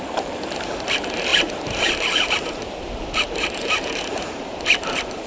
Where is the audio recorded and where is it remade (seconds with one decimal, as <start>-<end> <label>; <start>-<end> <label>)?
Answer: 0.0-5.3 remade